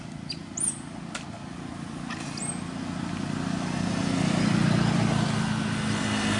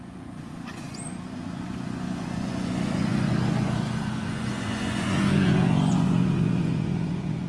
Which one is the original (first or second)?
first